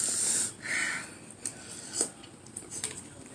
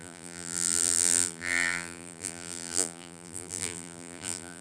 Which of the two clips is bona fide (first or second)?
first